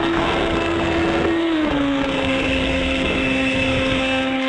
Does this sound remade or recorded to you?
remade